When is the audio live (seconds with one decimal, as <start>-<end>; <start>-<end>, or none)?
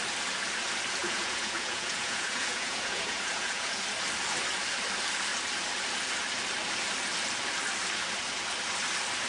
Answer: 0.0-1.0; 3.8-9.3